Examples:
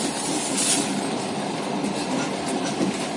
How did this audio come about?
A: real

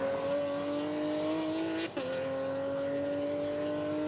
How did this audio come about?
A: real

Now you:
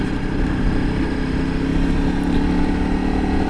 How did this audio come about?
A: real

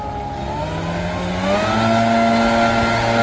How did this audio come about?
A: real